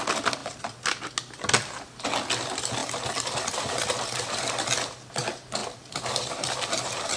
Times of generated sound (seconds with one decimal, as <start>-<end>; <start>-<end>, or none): 0.4-1.0; 2.8-4.5; 5.6-6.7